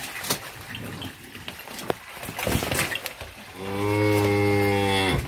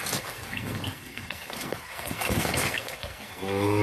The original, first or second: first